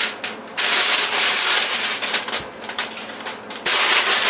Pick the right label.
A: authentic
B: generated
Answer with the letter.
A